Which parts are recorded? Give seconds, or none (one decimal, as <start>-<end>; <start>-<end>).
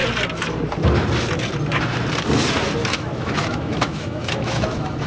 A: 0.0-2.8